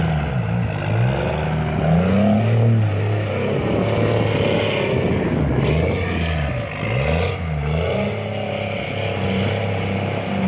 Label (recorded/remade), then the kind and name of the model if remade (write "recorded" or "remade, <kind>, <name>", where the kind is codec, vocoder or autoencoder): recorded